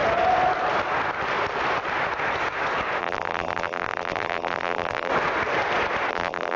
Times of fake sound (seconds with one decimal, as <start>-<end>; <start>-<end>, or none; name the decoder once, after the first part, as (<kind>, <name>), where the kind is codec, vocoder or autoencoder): 3.0-5.1 (vocoder, BigVGAN v2); 6.1-6.6